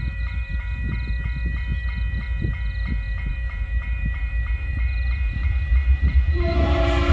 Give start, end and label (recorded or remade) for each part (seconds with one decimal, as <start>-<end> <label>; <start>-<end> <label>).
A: 0.0-0.5 remade; 0.5-3.3 recorded; 3.3-7.1 remade